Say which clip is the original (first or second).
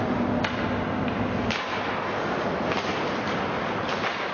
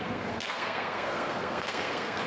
first